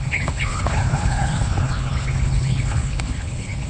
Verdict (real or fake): fake